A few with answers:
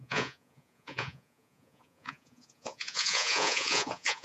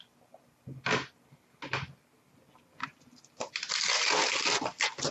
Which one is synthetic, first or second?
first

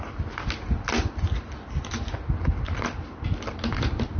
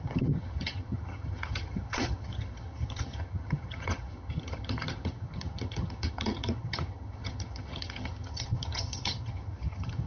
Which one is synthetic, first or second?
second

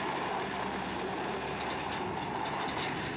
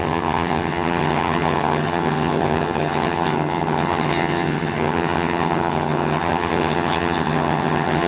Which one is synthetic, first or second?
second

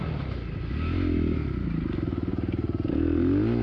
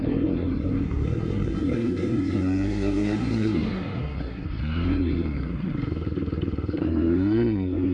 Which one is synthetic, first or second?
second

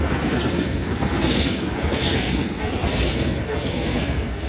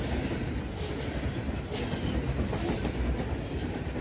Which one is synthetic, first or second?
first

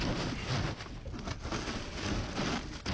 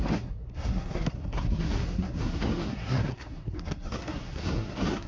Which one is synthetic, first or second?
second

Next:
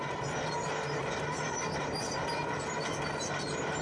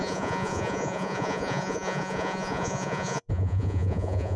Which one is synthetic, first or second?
second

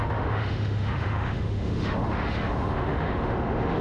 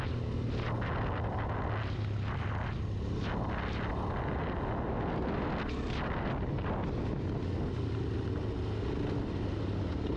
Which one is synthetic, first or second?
first